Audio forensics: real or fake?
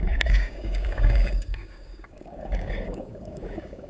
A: fake